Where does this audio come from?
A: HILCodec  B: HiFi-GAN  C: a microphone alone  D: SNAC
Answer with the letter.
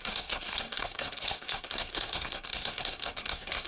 D